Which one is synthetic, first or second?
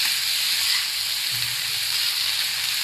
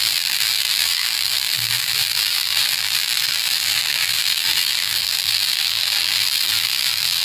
second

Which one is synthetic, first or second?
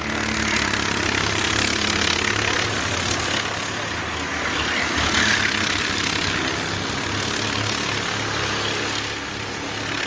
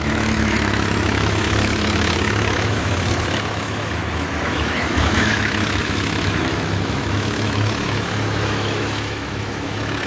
second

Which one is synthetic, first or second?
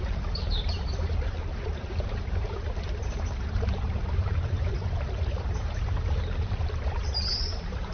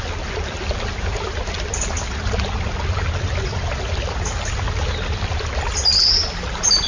first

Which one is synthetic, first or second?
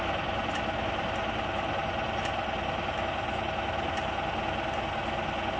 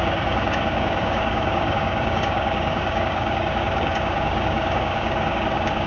second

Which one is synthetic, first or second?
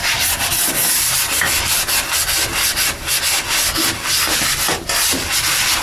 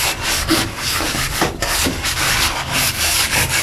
second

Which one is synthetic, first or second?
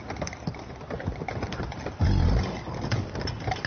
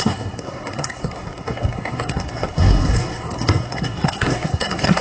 second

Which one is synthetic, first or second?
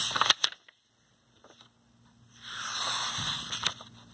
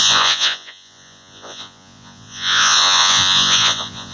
second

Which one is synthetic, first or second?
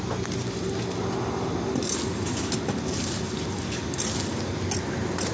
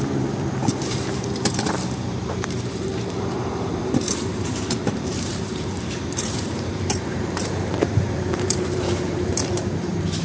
second